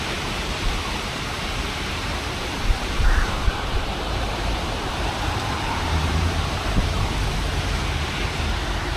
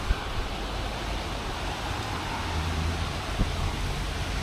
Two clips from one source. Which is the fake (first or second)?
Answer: first